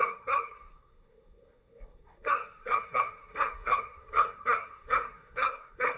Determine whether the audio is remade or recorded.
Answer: remade